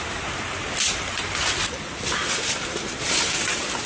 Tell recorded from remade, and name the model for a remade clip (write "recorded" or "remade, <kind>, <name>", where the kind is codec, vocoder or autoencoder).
recorded